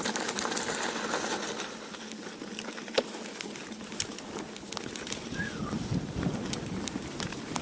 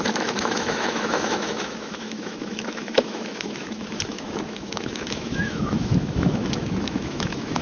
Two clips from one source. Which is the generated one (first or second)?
second